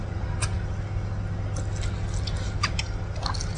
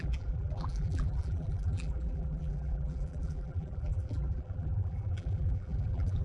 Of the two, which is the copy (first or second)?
second